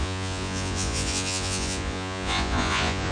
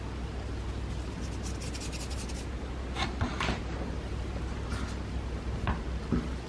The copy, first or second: first